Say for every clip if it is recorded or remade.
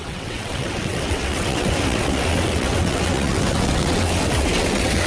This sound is remade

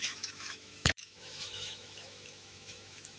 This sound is remade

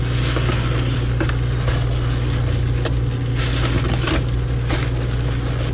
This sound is recorded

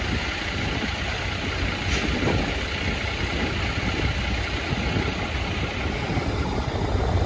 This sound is recorded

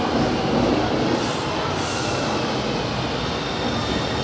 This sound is recorded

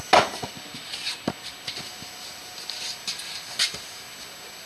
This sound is recorded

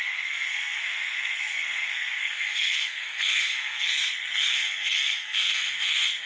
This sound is remade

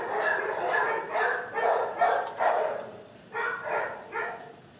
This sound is recorded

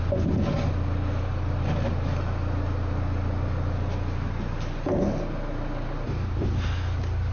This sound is recorded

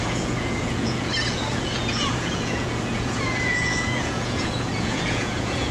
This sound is remade